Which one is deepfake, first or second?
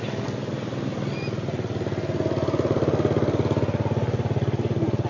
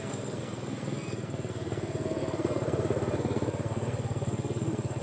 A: second